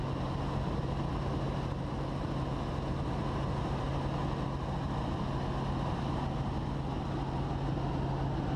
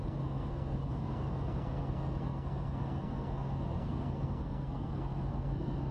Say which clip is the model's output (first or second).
second